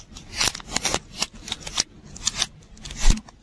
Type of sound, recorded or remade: recorded